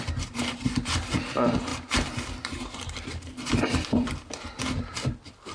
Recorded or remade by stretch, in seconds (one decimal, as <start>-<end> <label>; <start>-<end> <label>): 0.0-1.7 recorded; 1.7-4.6 remade; 4.6-5.5 recorded

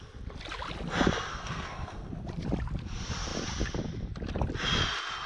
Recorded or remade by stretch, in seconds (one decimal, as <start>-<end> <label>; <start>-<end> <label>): 0.0-1.3 recorded; 1.3-2.1 remade; 2.1-5.3 recorded

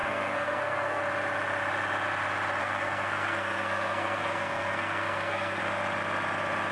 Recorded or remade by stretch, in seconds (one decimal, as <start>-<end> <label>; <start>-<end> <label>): 0.0-1.0 remade; 1.0-2.6 recorded; 2.6-5.6 remade; 5.6-6.7 recorded